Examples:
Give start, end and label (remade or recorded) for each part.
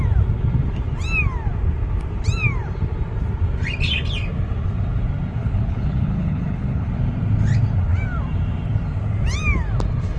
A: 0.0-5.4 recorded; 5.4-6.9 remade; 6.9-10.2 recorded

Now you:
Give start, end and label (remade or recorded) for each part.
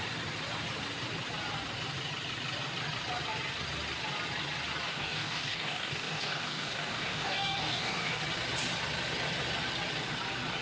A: 0.0-4.9 recorded; 4.9-8.2 remade; 8.2-10.6 recorded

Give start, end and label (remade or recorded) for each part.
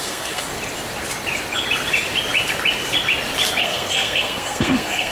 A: 0.0-0.5 remade; 0.5-3.6 recorded; 3.6-5.1 remade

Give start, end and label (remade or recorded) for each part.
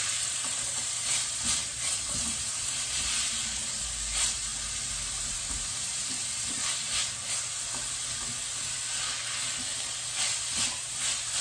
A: 0.0-4.5 remade; 4.5-5.1 recorded; 5.1-7.0 remade; 7.0-11.4 recorded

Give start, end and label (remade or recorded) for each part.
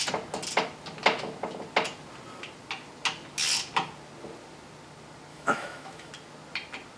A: 0.0-5.3 recorded; 5.3-6.1 remade; 6.1-7.0 recorded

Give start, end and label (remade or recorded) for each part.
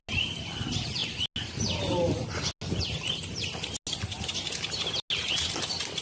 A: 0.0-6.0 recorded